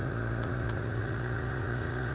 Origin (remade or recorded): remade